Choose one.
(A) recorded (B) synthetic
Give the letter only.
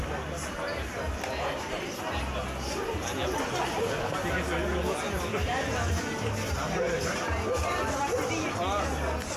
A